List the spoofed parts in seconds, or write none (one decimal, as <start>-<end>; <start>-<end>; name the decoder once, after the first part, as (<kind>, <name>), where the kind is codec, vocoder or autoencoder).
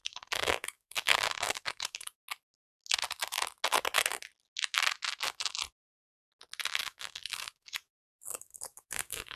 0.0-2.2 (codec, DAC); 6.8-9.4